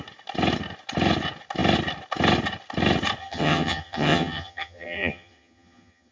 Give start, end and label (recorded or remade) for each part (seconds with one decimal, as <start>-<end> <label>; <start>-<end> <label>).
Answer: 0.0-3.2 recorded; 3.2-6.1 remade

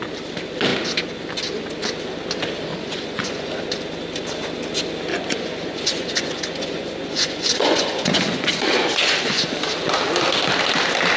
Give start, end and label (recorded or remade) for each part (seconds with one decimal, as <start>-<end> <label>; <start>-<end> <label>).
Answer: 0.0-2.7 recorded; 2.7-3.6 remade; 3.6-5.1 recorded; 5.1-9.5 remade; 9.5-11.2 recorded